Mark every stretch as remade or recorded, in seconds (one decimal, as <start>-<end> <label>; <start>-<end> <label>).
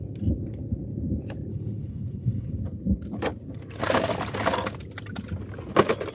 0.0-1.5 recorded; 1.5-2.6 remade; 2.6-6.1 recorded